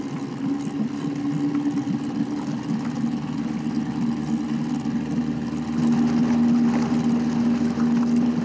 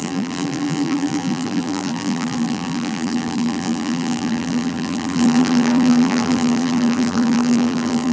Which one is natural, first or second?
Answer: first